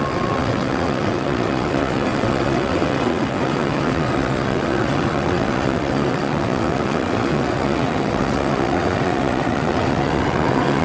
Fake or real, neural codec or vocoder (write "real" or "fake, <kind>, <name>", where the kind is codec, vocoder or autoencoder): fake, vocoder, WaveNeXt